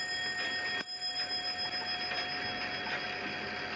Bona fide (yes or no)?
yes